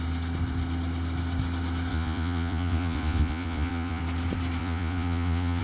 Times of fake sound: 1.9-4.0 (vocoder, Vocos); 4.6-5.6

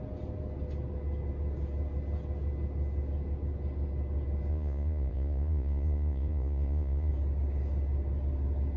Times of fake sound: 4.5-7.1 (vocoder, Vocos)

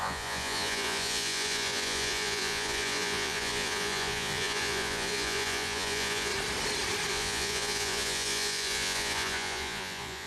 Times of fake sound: 0.0-6.3 (vocoder, Vocos); 7.1-10.3

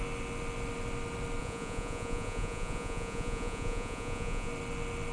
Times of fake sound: 1.4-4.5 (vocoder, Vocos)

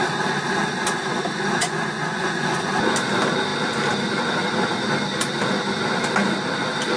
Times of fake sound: 1.6-2.7 (vocoder, Vocos)

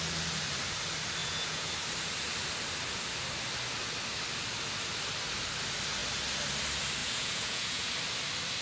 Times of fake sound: 1.2-1.7 (vocoder, Vocos); 7.0-7.9

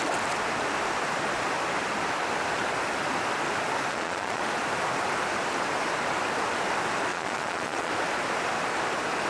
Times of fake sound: 3.9-4.4 (vocoder, Vocos); 7.1-7.9

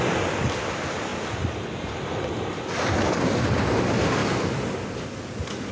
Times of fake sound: none